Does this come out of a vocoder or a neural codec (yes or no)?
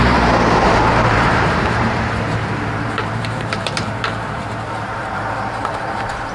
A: yes